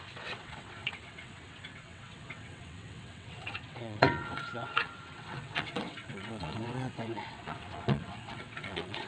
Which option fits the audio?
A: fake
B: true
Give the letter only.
A